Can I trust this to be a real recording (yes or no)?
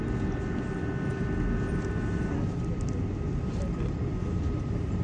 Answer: yes